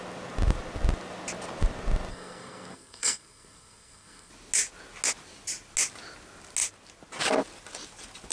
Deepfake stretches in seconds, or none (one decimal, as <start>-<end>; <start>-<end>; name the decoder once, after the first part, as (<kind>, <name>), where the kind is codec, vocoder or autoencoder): 2.1-4.3 (codec, SNAC)